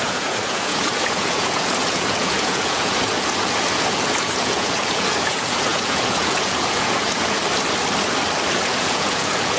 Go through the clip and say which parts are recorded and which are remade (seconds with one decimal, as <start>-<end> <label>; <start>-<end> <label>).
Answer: 0.0-7.4 remade; 7.4-8.5 recorded; 8.5-9.6 remade